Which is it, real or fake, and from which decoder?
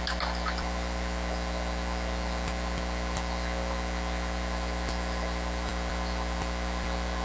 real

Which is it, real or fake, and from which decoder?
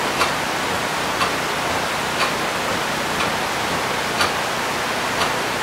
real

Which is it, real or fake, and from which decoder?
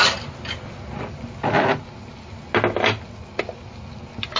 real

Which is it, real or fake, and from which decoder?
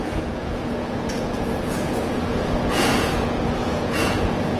fake, vocoder, Vocos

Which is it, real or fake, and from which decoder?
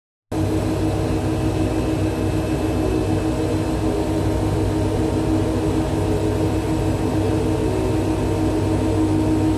real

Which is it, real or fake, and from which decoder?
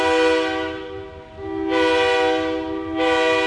real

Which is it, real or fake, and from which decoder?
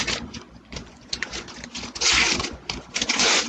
fake, vocoder, Vocos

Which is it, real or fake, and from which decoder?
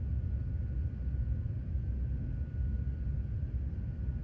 real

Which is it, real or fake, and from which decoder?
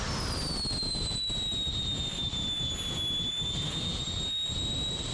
real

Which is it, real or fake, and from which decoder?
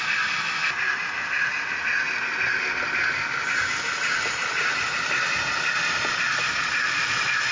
real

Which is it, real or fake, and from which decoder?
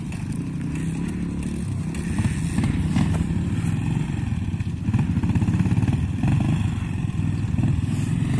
real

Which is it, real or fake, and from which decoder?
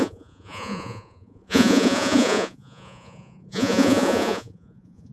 fake, vocoder, Vocos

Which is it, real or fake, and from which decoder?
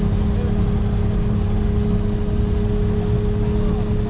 real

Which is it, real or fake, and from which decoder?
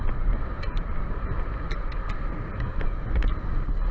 real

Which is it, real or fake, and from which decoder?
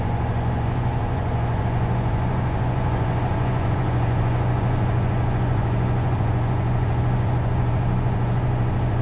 fake, vocoder, Vocos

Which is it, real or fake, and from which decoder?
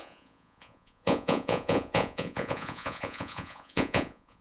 fake, vocoder, Vocos